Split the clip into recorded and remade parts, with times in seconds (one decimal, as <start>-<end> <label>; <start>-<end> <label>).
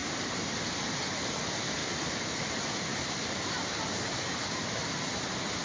0.0-0.7 remade; 0.7-1.8 recorded; 1.8-2.5 remade; 2.5-2.9 recorded; 2.9-5.6 remade